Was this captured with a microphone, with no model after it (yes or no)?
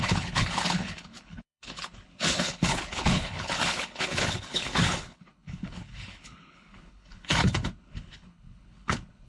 no